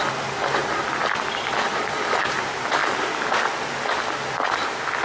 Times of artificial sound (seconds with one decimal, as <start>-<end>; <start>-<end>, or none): 0.6-1.2